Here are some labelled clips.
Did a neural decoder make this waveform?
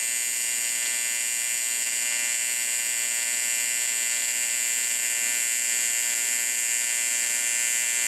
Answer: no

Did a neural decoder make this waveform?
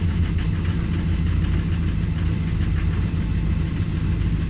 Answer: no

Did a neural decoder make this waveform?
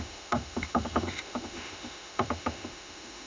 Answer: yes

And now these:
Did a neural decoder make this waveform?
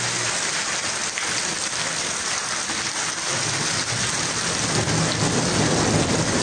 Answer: no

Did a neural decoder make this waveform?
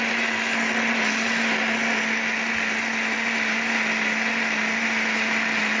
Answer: no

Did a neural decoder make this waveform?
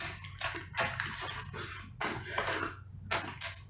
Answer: no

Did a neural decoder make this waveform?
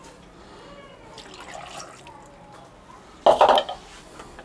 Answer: no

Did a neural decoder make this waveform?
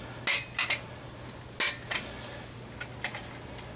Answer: no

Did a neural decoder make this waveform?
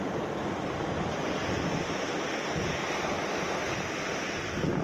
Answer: no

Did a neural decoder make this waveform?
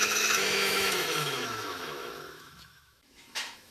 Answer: yes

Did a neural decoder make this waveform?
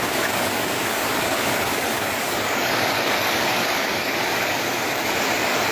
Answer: yes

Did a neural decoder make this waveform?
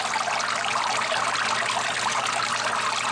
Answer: no